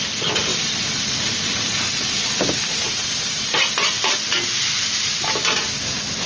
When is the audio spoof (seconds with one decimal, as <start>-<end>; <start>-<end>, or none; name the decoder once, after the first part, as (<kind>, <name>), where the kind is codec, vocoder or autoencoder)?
0.5-4.3 (vocoder, BigVGAN v2)